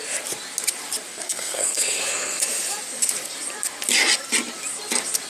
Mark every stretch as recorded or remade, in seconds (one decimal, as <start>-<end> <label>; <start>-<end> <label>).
0.0-1.1 recorded; 1.1-2.4 remade; 2.4-5.3 recorded